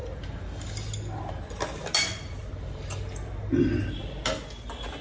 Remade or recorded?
recorded